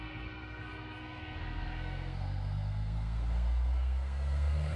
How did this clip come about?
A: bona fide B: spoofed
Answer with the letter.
B